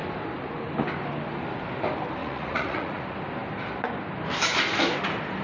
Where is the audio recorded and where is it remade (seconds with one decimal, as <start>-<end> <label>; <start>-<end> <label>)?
0.0-2.2 recorded; 2.2-3.0 remade; 3.0-5.4 recorded

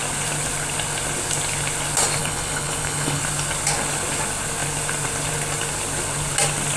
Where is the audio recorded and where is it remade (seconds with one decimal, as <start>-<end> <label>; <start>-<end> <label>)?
0.0-2.2 recorded; 2.2-3.2 remade; 3.2-6.8 recorded

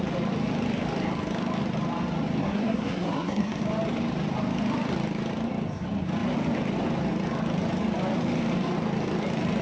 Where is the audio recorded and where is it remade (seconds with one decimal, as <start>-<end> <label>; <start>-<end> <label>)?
0.0-2.4 recorded; 2.4-3.6 remade; 3.6-9.6 recorded

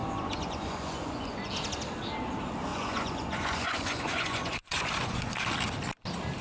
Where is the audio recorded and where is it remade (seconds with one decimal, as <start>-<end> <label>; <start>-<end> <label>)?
0.0-1.5 remade; 1.5-2.7 recorded; 2.7-5.3 remade; 5.3-6.4 recorded

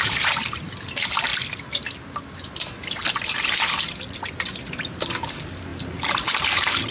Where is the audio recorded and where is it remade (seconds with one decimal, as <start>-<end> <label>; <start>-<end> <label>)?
0.0-1.3 remade; 1.3-5.3 recorded; 5.3-6.9 remade